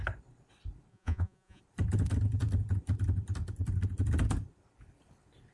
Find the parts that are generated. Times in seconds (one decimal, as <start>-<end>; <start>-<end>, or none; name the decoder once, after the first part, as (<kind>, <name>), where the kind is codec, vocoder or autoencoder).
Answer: 0.9-1.6 (vocoder, Vocos)